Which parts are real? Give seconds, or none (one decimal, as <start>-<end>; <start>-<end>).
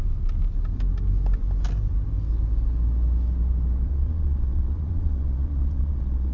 0.0-3.9